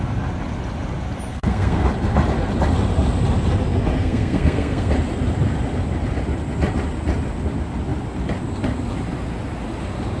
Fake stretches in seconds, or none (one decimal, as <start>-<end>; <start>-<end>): 1.3-1.9; 4.0-4.9